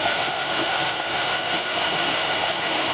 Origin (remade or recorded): remade